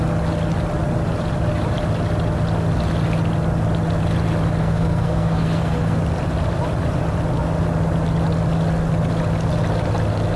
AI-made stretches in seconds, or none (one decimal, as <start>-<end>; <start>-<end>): 4.6-6.0